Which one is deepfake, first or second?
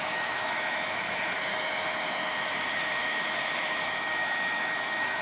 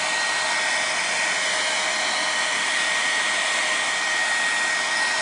first